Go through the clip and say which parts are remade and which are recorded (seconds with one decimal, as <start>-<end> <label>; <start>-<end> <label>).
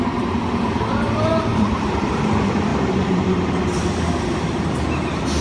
0.0-1.5 recorded; 1.5-2.2 remade; 2.2-2.7 recorded; 2.7-3.5 remade; 3.5-5.4 recorded